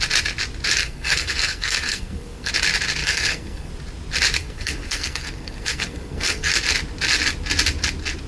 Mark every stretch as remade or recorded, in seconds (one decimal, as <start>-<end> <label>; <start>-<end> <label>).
0.0-0.8 recorded; 0.8-2.5 remade; 2.5-3.0 recorded; 3.0-3.7 remade; 3.7-4.4 recorded; 4.4-6.5 remade; 6.5-8.3 recorded